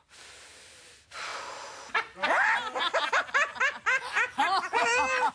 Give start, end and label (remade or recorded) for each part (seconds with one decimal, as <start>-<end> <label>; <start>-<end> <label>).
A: 0.0-5.3 recorded